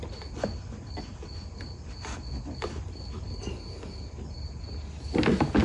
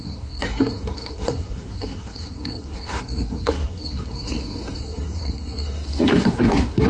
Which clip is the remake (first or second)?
second